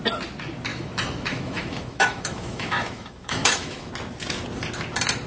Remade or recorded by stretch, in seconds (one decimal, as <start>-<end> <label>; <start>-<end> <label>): 0.0-0.7 recorded; 0.7-3.9 remade; 3.9-5.3 recorded